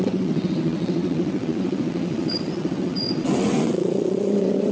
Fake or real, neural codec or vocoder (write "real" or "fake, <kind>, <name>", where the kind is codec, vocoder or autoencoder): fake, vocoder, WaveNeXt